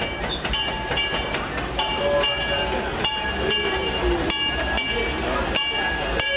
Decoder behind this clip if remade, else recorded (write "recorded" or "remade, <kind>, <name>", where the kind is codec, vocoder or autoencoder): recorded